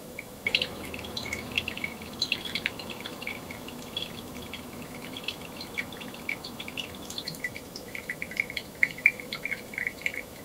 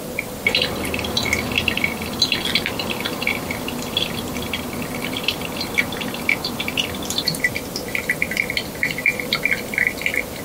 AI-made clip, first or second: first